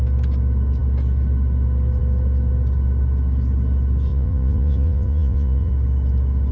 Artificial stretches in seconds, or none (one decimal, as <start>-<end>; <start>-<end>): 4.1-5.7